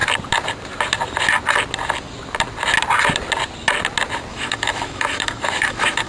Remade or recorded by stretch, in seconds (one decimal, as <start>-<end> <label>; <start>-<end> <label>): 0.0-4.3 recorded; 4.3-6.1 remade